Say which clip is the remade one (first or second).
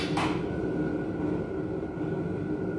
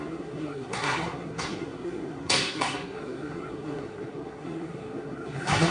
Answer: second